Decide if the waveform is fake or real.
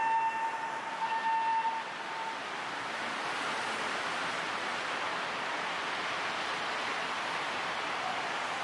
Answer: real